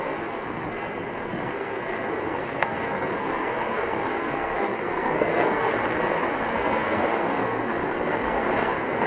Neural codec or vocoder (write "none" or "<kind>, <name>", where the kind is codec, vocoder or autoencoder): codec, SNAC